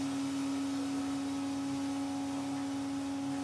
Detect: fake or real real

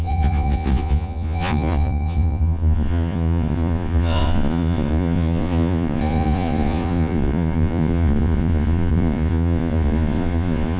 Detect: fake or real fake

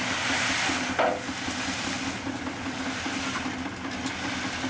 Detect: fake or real real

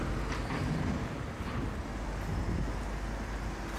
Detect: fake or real real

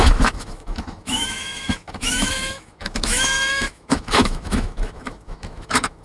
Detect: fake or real fake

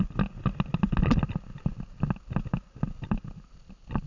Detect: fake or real real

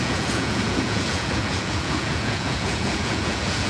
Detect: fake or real fake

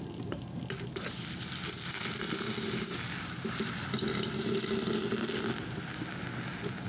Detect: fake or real real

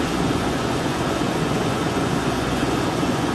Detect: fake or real fake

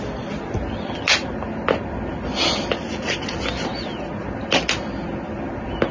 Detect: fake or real real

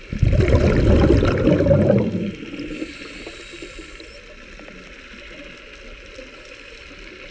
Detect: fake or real real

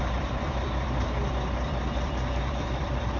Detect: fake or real fake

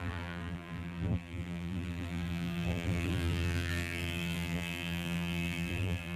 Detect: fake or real fake